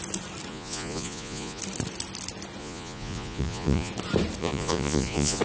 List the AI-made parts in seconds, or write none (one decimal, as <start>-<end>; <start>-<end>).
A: 0.5-1.6; 2.6-3.9; 4.4-5.4